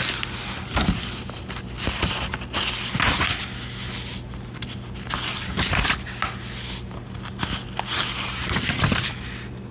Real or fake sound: real